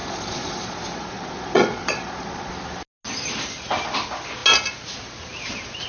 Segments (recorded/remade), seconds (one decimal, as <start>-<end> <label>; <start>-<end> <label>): 0.0-2.5 remade; 2.5-5.9 recorded